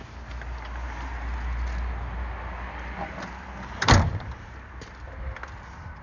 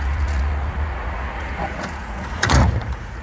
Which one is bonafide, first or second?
first